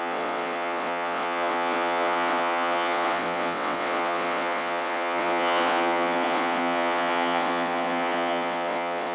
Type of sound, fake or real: fake